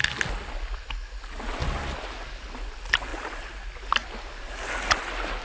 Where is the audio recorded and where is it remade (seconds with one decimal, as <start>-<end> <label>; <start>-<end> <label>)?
0.0-5.4 recorded